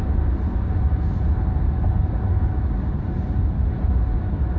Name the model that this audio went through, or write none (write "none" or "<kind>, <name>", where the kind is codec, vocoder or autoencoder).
none